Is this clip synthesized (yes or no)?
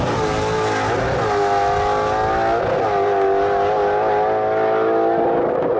no